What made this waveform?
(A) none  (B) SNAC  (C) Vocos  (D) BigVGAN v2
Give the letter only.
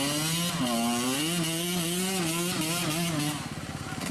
A